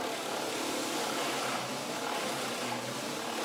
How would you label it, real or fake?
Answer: real